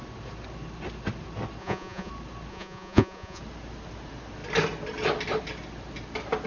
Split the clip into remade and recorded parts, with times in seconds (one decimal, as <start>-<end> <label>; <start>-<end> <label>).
0.0-1.6 recorded; 1.6-2.1 remade; 2.1-2.5 recorded; 2.5-3.4 remade; 3.4-6.5 recorded